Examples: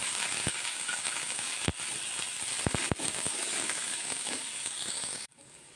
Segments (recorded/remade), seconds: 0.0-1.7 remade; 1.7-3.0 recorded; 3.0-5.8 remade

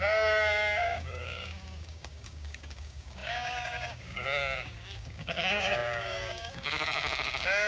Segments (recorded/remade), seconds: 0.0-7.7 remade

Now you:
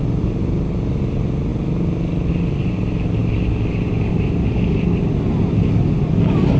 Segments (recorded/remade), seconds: 0.0-6.6 recorded

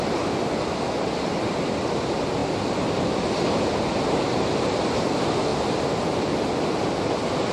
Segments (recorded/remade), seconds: 0.0-7.5 recorded

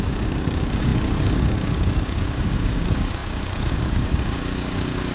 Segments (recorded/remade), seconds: 0.0-5.1 remade

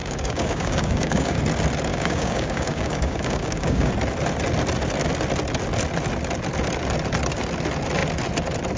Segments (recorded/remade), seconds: 0.0-1.4 remade; 1.4-1.9 recorded; 1.9-3.9 remade; 3.9-8.8 recorded

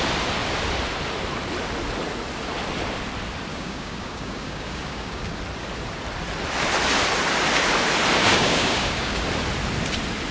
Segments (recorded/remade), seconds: 0.0-3.5 recorded; 3.5-5.3 remade; 5.3-8.2 recorded; 8.2-9.2 remade; 9.2-10.3 recorded

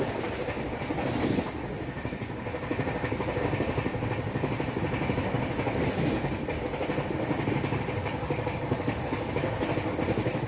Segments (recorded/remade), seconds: 0.0-8.0 recorded; 8.0-9.3 remade; 9.3-10.5 recorded